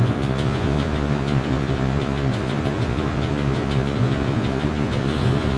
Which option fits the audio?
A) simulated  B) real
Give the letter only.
A